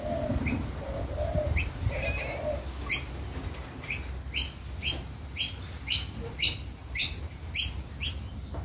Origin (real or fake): real